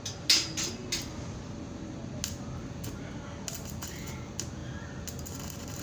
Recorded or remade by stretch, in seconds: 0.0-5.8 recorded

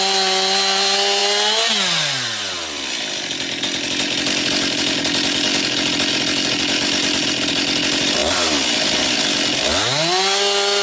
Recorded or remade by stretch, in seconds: 0.0-10.8 recorded